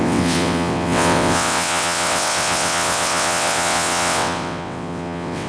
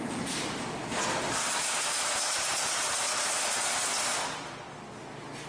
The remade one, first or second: first